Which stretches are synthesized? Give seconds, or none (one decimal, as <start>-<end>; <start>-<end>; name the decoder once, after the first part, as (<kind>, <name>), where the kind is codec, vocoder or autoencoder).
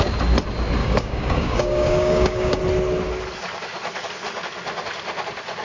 0.8-2.6 (codec, DAC)